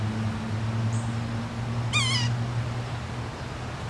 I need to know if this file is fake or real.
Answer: real